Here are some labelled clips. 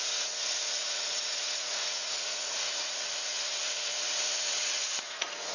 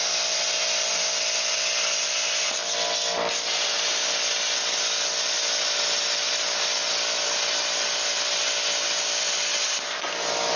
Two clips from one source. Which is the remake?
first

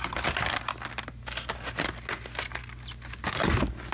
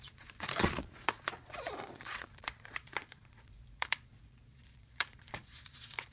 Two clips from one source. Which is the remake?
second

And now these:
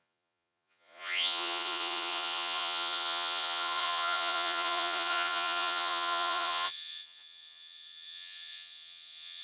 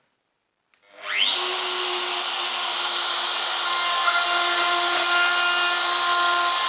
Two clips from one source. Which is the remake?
first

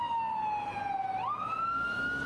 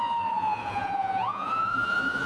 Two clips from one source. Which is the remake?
second